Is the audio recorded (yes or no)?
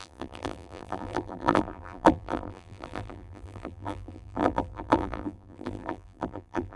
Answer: no